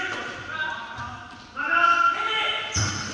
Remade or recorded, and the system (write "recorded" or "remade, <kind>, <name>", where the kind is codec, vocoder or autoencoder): recorded